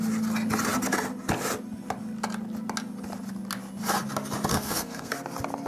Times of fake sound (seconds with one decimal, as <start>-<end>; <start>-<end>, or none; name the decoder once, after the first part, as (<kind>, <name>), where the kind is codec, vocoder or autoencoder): 4.5-5.1 (codec, SNAC)